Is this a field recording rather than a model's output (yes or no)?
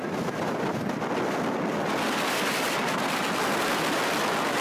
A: yes